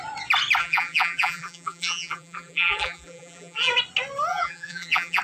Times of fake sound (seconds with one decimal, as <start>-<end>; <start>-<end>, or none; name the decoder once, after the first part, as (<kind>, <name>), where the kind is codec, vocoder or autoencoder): 0.6-3.7 (vocoder, BigVGAN v2); 4.3-5.2